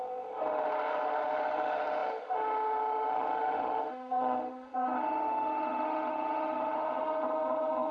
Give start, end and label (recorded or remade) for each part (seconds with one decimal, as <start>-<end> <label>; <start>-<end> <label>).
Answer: 0.0-7.9 remade